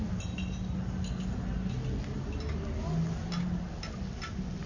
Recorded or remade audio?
recorded